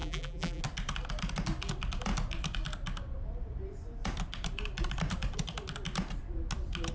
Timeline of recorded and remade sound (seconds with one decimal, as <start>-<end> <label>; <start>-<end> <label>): 0.0-0.6 remade; 0.6-6.9 recorded